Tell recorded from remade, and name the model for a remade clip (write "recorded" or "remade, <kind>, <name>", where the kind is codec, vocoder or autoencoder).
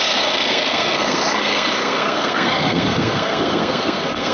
remade, codec, SNAC